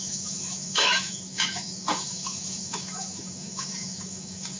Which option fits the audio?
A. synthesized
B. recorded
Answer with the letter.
A